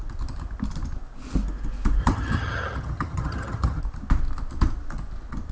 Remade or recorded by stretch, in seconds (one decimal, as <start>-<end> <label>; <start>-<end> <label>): 0.0-2.0 recorded; 2.0-3.8 remade; 3.8-5.5 recorded